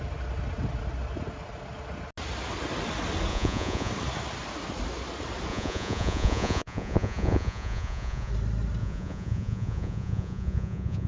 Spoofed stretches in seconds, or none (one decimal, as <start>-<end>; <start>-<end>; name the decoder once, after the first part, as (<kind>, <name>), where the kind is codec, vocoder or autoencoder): 3.3-3.9 (vocoder, Vocos); 5.5-8.3; 8.8-11.1